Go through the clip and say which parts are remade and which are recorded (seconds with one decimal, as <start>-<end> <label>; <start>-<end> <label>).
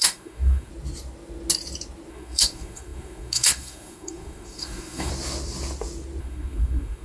0.0-0.7 remade; 0.7-2.1 recorded; 2.1-5.1 remade; 5.1-6.2 recorded; 6.2-7.0 remade